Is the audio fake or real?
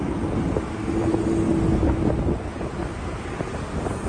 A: real